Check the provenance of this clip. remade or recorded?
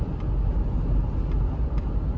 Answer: recorded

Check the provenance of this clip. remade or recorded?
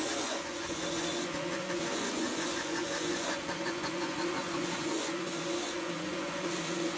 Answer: remade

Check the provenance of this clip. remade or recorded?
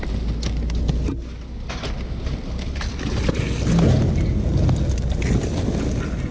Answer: recorded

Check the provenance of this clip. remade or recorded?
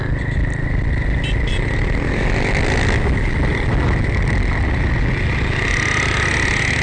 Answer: recorded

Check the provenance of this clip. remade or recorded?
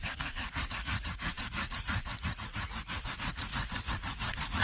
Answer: remade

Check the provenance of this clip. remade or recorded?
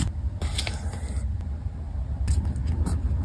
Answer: recorded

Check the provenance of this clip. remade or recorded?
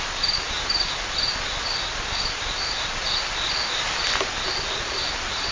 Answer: recorded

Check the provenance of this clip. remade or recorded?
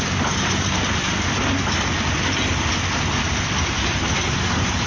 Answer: recorded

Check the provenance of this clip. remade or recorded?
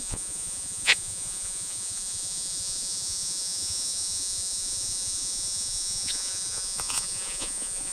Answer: remade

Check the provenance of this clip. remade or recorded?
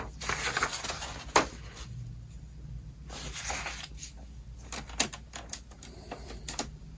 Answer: recorded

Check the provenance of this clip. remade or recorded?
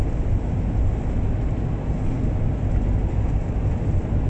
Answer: recorded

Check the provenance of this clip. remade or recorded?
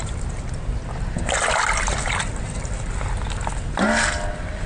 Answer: recorded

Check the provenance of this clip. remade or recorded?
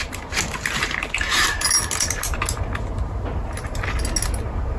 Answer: recorded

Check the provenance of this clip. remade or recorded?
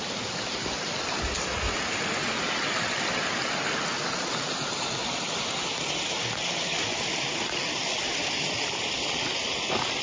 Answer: recorded